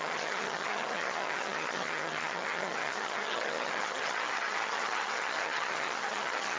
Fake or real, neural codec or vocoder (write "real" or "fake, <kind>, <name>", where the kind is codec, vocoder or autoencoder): fake, vocoder, HiFi-GAN